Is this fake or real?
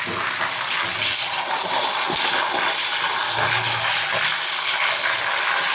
real